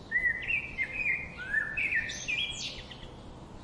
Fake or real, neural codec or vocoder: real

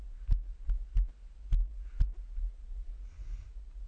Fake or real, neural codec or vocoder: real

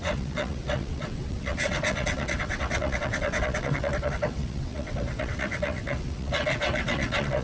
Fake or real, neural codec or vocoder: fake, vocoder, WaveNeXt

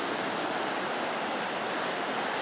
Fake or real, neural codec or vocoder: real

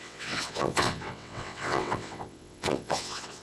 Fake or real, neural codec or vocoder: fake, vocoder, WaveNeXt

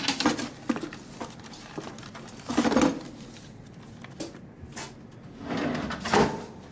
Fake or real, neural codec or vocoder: real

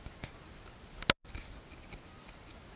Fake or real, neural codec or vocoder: real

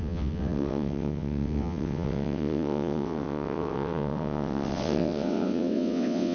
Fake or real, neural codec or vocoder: fake, vocoder, WaveNeXt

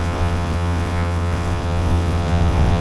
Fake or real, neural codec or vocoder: fake, vocoder, WaveNeXt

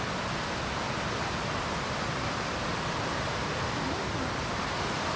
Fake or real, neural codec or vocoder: real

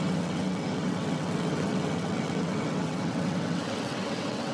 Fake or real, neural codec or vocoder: fake, vocoder, WaveNeXt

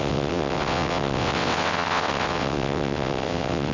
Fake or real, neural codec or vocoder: fake, vocoder, WaveNeXt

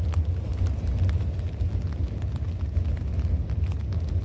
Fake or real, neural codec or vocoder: real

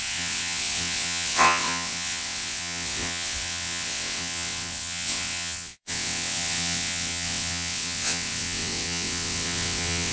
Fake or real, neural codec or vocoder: fake, vocoder, WaveNeXt